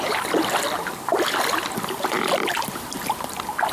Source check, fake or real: real